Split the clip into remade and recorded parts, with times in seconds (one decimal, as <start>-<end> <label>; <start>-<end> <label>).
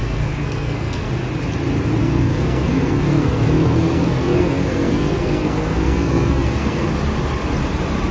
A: 0.0-1.1 remade; 1.1-2.0 recorded; 2.0-6.9 remade; 6.9-8.1 recorded